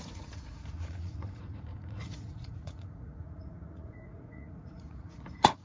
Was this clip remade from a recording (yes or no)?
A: yes